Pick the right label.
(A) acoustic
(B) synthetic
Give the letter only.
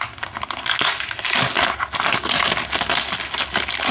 A